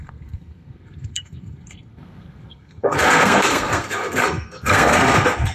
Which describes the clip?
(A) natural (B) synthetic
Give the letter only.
B